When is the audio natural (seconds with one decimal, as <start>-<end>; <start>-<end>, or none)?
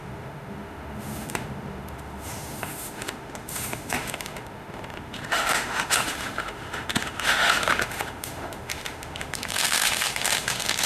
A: none